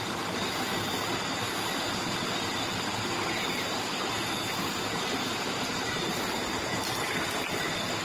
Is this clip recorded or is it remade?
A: remade